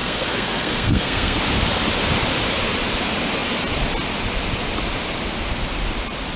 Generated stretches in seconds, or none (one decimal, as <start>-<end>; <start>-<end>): 0.0-1.4